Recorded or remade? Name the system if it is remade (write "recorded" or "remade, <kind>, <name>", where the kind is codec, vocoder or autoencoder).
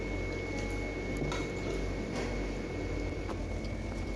recorded